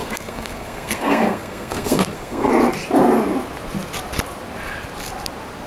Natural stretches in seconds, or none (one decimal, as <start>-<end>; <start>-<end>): 2.5-5.7